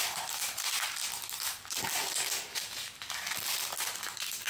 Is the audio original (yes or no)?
yes